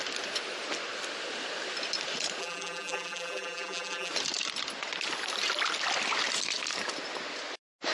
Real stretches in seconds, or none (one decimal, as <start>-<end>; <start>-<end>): 0.0-2.4; 4.1-7.9